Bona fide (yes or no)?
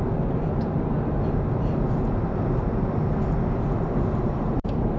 yes